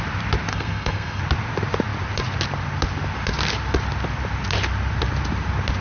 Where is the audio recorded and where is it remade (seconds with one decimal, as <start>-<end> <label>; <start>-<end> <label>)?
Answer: 0.0-0.5 recorded; 0.5-1.2 remade; 1.2-5.8 recorded